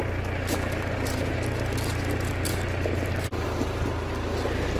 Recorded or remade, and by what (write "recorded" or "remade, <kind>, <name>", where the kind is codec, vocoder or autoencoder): recorded